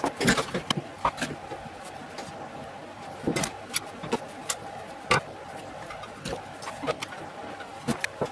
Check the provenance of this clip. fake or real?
real